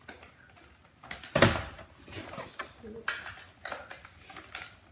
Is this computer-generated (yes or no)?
no